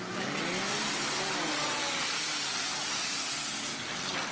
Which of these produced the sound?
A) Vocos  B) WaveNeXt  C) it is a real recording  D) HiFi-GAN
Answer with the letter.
C